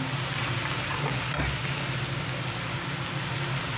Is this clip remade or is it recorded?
recorded